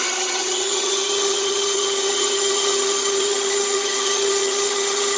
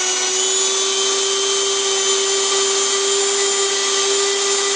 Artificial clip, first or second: first